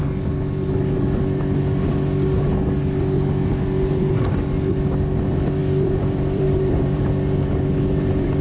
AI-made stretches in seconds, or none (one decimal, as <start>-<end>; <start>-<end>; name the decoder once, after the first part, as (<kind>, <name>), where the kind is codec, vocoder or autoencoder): 5.6-7.0 (vocoder, BigVGAN v2)